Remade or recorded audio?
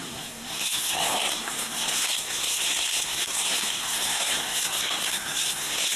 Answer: remade